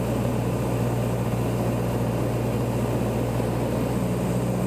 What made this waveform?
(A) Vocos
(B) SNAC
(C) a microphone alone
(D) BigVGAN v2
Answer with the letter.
C